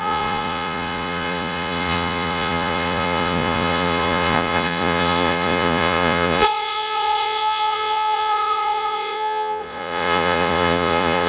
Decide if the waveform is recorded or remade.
remade